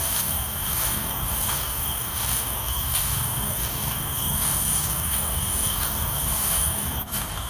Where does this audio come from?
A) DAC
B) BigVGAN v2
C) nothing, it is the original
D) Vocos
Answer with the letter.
A